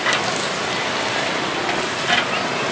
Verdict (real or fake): real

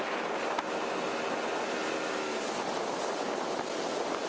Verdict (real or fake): real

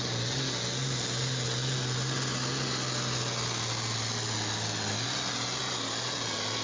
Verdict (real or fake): real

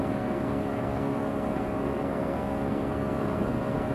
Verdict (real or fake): fake